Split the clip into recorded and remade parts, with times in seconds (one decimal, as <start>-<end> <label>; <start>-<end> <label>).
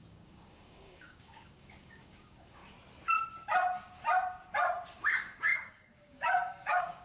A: 0.0-2.6 remade; 2.6-5.0 recorded; 5.0-7.0 remade